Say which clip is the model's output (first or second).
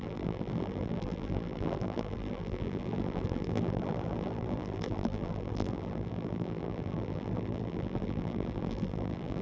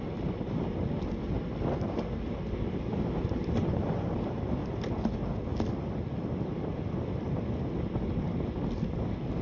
first